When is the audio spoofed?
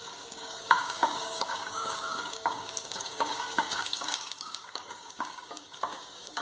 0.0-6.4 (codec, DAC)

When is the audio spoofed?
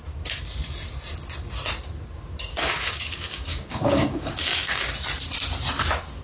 2.5-4.9 (codec, DAC)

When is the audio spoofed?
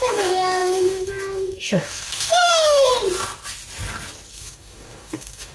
0.0-2.9 (codec, DAC); 4.3-5.5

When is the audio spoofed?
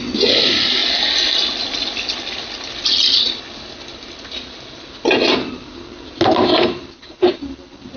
none